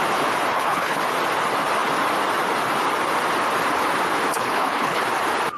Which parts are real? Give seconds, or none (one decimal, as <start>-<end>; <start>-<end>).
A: 0.0-0.5; 1.0-4.3; 5.0-5.6